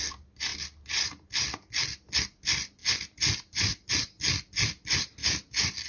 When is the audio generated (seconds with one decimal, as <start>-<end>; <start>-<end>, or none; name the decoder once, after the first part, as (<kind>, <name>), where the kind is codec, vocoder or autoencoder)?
none